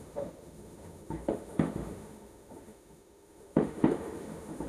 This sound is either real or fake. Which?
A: fake